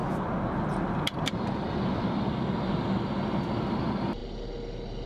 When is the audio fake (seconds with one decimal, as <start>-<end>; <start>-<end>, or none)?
none